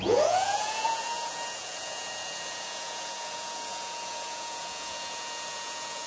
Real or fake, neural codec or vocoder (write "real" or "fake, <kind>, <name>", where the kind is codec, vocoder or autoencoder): fake, vocoder, Vocos